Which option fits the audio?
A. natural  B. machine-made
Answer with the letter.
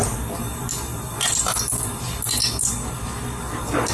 A